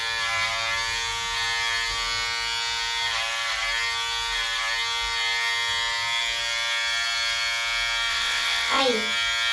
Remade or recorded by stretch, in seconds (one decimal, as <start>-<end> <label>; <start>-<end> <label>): 0.0-8.1 recorded; 8.1-8.8 remade; 8.8-9.5 recorded